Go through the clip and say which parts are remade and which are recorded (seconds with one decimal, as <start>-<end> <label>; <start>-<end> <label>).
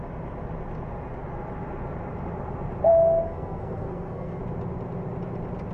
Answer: 0.0-2.9 recorded; 2.9-4.4 remade; 4.4-5.7 recorded